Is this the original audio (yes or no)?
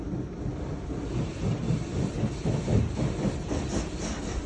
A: yes